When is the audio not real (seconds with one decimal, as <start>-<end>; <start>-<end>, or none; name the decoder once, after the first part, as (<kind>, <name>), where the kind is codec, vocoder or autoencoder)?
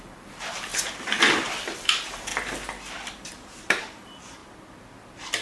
0.0-0.7 (vocoder, BigVGAN v2); 1.5-2.3; 3.6-4.4